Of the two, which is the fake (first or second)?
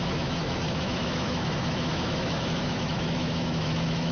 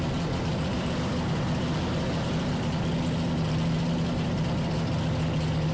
first